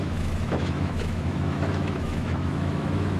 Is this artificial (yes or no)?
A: yes